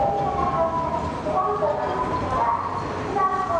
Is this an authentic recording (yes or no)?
yes